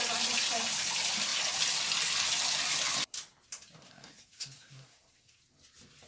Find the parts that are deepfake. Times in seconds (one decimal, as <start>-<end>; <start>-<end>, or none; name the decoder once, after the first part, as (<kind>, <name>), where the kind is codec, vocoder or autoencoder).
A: 3.8-5.4 (codec, SNAC)